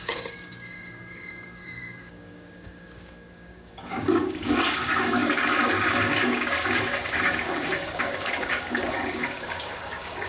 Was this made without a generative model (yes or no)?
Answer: no